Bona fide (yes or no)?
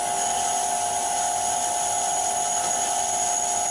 yes